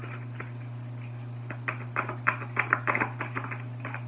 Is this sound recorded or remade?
recorded